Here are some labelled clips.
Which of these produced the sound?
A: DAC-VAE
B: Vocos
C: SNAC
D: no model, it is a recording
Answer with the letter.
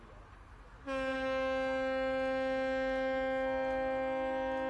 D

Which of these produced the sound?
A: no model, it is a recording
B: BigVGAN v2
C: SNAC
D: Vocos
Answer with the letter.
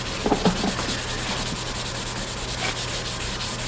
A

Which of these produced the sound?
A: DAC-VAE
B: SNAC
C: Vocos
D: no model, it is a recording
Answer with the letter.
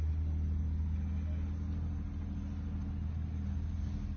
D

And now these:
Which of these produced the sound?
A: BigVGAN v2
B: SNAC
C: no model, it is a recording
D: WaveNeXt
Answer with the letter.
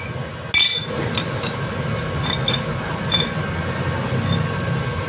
C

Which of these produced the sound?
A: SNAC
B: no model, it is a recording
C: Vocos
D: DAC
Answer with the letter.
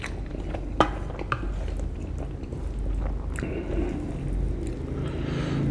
B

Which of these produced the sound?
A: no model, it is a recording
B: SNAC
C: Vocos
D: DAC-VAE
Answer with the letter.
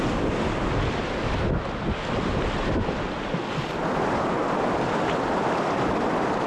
A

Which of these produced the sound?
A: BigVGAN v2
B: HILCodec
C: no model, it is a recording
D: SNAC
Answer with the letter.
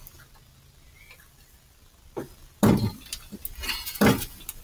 C